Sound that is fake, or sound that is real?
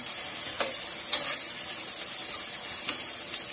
real